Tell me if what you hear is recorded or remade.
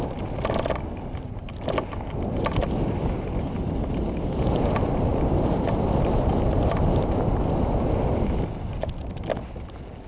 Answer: recorded